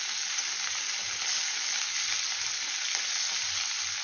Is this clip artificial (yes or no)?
no